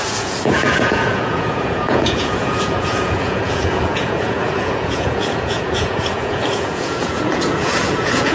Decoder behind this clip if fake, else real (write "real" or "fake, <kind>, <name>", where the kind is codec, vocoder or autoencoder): fake, vocoder, Vocos